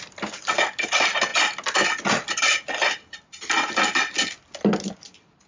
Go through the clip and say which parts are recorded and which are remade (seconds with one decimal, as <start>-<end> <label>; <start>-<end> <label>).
0.0-5.5 recorded